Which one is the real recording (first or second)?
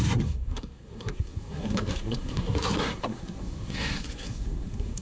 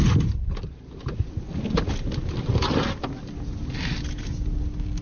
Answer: second